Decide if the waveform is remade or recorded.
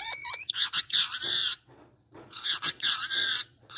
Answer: remade